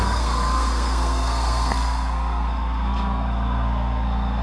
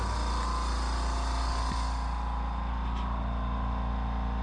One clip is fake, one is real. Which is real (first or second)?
second